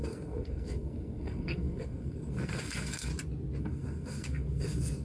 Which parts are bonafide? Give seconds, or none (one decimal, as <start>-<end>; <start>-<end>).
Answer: 3.1-3.6